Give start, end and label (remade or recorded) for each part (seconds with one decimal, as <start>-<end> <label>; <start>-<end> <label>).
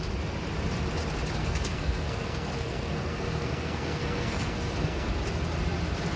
0.0-1.4 recorded; 1.4-5.1 remade; 5.1-6.2 recorded